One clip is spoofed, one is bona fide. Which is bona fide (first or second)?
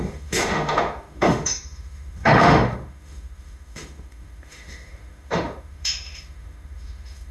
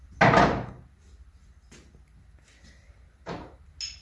second